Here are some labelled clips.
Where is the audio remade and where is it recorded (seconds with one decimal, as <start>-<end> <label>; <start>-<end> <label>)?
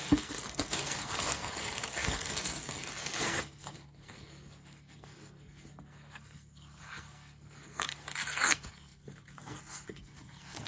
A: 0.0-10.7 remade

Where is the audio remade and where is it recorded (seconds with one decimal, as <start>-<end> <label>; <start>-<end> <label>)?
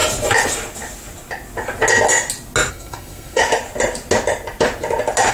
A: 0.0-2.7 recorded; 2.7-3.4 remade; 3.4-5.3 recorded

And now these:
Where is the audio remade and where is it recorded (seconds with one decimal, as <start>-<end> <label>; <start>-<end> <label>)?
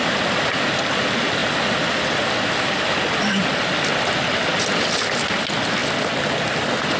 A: 0.0-7.0 recorded